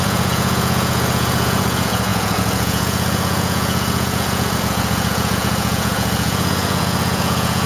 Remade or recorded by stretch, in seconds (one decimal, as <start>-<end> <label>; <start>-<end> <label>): 0.0-7.7 remade